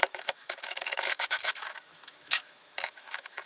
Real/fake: fake